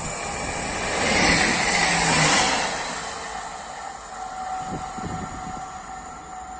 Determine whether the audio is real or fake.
real